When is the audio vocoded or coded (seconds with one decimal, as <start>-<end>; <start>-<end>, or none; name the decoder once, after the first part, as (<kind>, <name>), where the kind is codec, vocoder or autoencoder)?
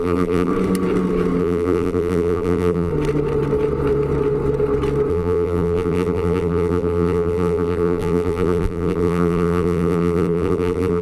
0.0-0.5 (vocoder, BigVGAN v2); 1.4-2.9; 5.1-11.0